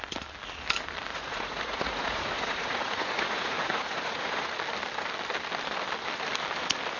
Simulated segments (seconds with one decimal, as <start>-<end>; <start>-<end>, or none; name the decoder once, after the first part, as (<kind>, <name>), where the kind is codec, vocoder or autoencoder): 1.1-4.5 (vocoder, Vocos)